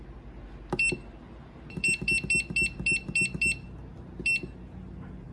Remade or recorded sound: recorded